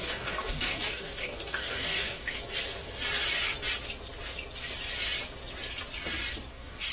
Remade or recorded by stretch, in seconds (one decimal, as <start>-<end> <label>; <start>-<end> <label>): 0.0-2.4 remade; 2.4-6.5 recorded; 6.5-6.9 remade